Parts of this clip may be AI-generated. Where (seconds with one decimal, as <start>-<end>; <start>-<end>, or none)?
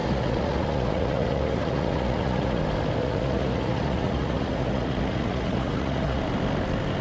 0.0-2.6; 3.0-6.2